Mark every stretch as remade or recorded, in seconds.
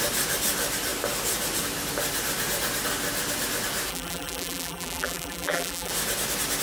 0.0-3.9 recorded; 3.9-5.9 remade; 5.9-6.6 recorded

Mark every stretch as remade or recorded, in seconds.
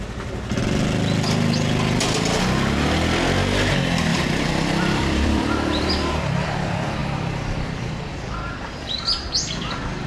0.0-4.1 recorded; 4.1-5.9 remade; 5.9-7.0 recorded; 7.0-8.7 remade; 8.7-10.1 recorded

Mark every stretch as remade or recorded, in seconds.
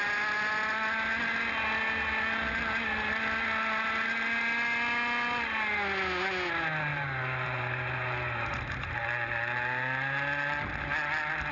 0.0-6.9 recorded; 6.9-8.9 remade; 8.9-11.5 recorded